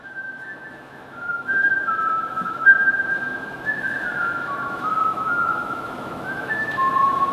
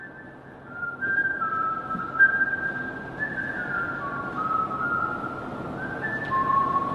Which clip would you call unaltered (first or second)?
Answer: second